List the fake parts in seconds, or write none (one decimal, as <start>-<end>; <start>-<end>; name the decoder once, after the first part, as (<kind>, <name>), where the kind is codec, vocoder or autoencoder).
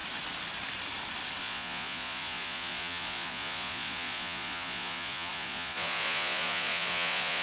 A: 1.4-7.4 (vocoder, Vocos)